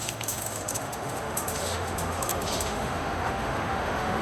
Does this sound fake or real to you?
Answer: fake